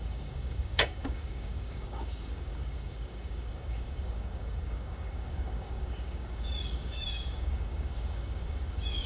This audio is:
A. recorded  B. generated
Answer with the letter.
B